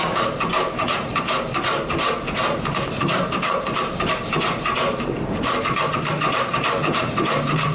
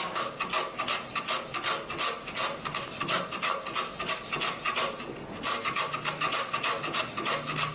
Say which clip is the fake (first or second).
first